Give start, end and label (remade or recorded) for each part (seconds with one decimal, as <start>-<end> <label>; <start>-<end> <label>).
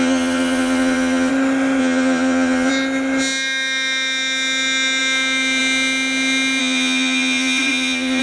0.0-1.3 remade; 1.3-1.8 recorded; 1.8-2.7 remade; 2.7-6.6 recorded; 6.6-8.2 remade